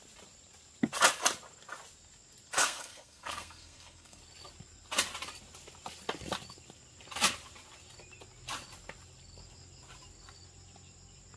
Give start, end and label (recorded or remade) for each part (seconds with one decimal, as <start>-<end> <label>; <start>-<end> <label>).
0.0-2.6 recorded; 2.6-4.2 remade; 4.2-11.4 recorded